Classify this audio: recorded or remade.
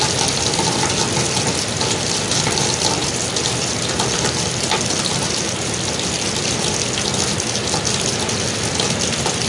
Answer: recorded